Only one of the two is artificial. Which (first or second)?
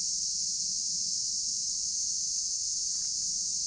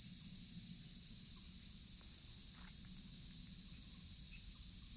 second